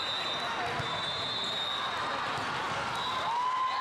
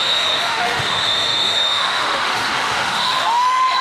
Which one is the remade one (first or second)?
second